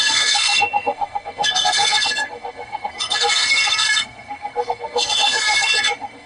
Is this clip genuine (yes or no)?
no